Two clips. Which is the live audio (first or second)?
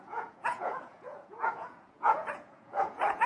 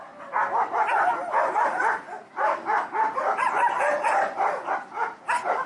second